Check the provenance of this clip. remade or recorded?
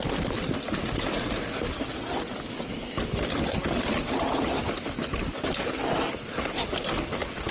recorded